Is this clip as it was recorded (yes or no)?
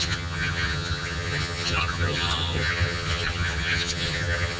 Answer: no